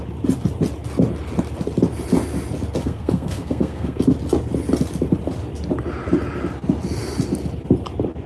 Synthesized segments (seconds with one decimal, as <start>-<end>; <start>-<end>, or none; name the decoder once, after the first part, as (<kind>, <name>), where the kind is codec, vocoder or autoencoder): 2.8-4.0 (codec, SNAC)